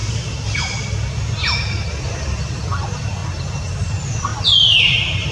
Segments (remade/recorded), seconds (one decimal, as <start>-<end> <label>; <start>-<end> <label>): 0.0-3.2 remade; 3.2-3.9 recorded; 3.9-4.3 remade; 4.3-4.8 recorded; 4.8-5.3 remade